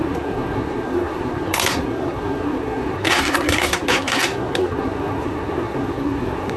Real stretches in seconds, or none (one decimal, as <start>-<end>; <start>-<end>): none